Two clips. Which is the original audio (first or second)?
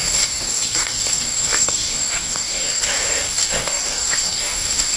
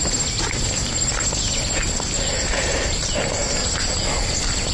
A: second